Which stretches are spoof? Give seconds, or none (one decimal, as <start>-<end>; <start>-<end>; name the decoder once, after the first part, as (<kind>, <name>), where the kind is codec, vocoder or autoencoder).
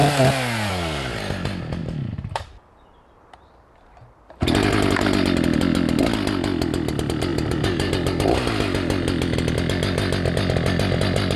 1.8-4.4 (vocoder, BigVGAN v2); 7.3-7.9